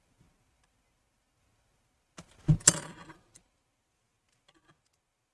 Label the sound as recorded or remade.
recorded